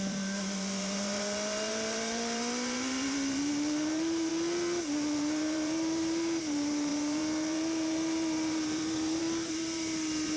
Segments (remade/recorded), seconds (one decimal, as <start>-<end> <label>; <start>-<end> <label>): 0.0-4.3 remade; 4.3-4.8 recorded; 4.8-10.4 remade